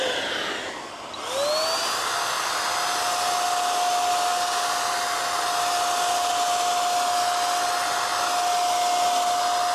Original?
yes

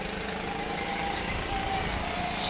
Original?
yes